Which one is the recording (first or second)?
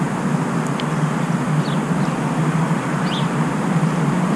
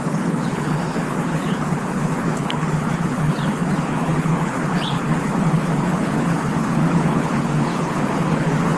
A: first